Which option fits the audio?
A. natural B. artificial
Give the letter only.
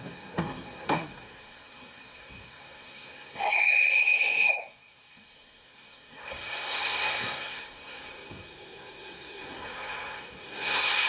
B